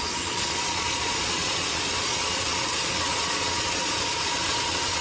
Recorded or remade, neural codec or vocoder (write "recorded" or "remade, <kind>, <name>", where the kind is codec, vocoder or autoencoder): remade, vocoder, Vocos